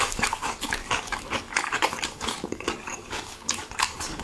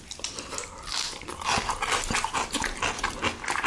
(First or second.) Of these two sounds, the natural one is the second